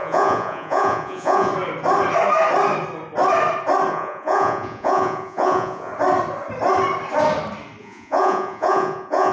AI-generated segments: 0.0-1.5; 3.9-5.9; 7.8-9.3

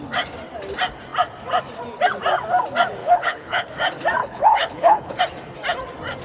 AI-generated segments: 3.0-3.7; 4.2-5.2

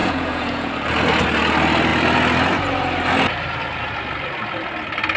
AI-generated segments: 0.0-0.7

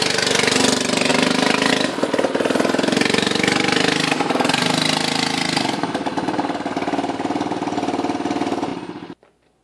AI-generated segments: 1.1-1.7

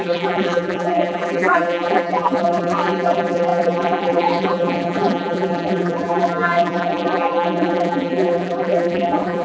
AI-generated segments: 0.0-9.4

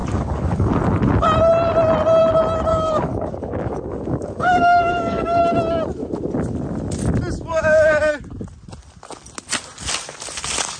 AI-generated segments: 0.0-0.7; 2.7-5.4; 7.5-8.1

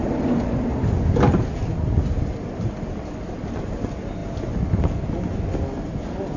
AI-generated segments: none